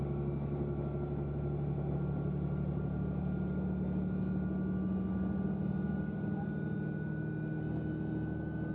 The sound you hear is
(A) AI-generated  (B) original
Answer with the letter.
B